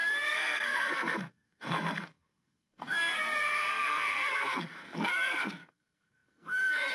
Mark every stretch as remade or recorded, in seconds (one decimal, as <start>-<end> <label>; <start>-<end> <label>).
0.0-6.9 remade